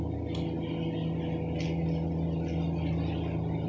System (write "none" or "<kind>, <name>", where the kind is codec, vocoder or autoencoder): none